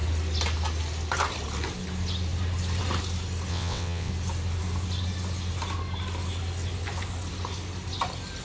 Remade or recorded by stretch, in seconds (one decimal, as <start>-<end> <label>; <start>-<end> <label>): 0.0-3.5 recorded; 3.5-4.1 remade; 4.1-8.4 recorded